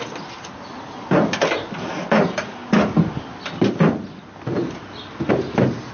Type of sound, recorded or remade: recorded